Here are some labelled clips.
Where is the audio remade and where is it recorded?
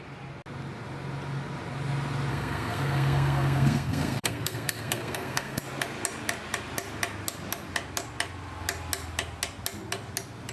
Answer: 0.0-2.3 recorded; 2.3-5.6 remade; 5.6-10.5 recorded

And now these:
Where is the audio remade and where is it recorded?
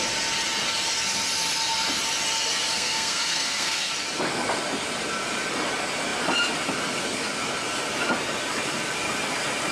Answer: 0.0-2.7 recorded; 2.7-3.9 remade; 3.9-9.7 recorded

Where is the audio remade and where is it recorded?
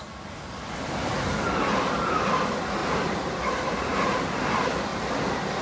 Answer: 0.0-2.8 recorded; 2.8-4.2 remade; 4.2-5.6 recorded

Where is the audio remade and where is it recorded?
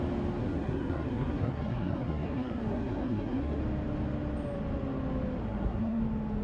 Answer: 0.0-0.4 recorded; 0.4-3.6 remade; 3.6-5.4 recorded; 5.4-6.0 remade; 6.0-6.4 recorded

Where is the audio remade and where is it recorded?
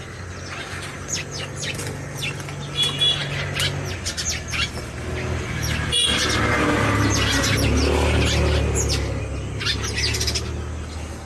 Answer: 0.0-11.3 recorded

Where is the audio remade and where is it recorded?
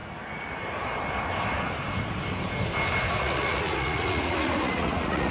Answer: 0.0-3.2 recorded; 3.2-5.3 remade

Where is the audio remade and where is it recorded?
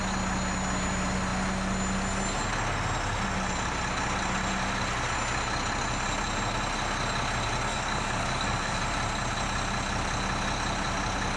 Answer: 0.0-7.7 recorded; 7.7-8.8 remade; 8.8-11.4 recorded